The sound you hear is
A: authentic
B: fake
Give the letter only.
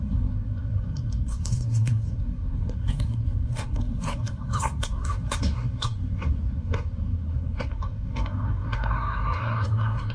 B